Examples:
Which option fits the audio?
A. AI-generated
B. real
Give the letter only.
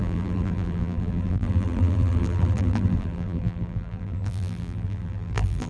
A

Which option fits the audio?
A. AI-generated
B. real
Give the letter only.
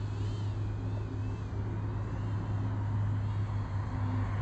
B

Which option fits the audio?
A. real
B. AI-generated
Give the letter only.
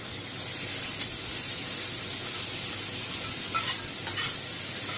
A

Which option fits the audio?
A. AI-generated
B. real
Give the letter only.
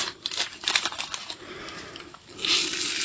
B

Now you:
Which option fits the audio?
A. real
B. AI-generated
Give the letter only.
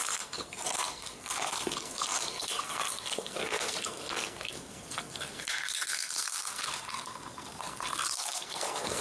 B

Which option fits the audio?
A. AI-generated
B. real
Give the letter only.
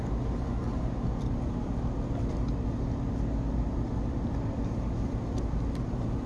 B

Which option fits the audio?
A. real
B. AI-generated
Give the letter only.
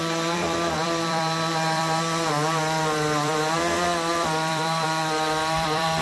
B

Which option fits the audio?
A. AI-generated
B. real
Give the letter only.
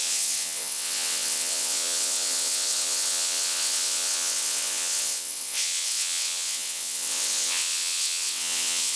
A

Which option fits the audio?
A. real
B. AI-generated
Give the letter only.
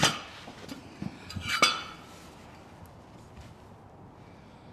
A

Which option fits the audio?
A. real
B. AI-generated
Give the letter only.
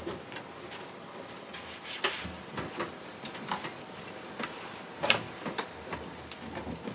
A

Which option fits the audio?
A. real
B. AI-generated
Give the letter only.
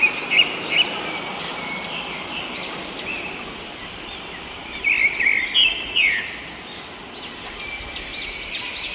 A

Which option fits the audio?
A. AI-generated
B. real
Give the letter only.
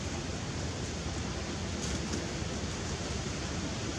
B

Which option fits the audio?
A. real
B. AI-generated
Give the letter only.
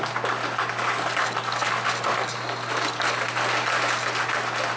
A